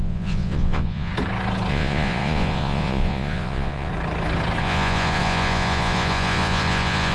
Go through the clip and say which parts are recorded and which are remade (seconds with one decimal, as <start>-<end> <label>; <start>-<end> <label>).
0.0-1.1 remade; 1.1-1.7 recorded; 1.7-3.9 remade; 3.9-4.6 recorded; 4.6-7.1 remade